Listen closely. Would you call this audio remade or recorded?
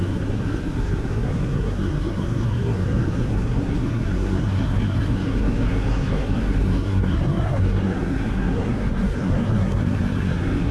remade